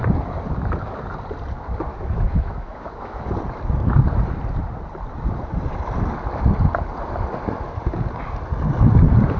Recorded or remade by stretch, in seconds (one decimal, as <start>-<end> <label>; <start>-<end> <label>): 0.0-1.9 recorded; 1.9-3.3 remade; 3.3-9.4 recorded